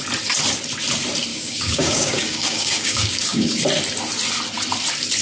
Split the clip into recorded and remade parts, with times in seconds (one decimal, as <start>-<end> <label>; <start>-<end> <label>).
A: 0.0-1.3 recorded; 1.3-3.6 remade; 3.6-5.2 recorded